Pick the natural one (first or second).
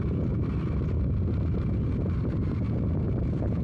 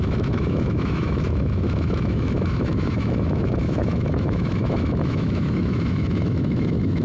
first